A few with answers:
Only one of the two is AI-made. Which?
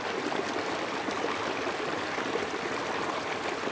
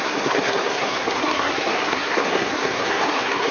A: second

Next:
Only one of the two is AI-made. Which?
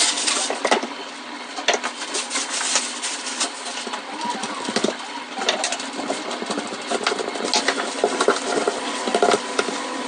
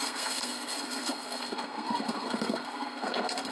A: second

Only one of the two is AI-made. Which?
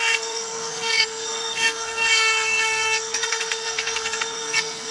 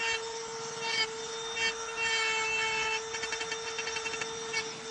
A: first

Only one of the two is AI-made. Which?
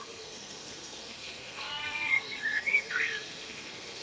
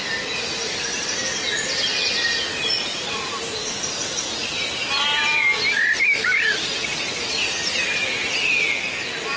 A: first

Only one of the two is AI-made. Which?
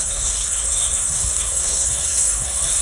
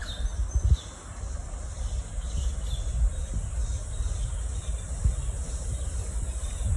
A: first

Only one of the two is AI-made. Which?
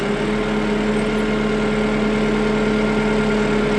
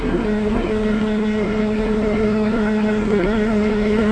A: second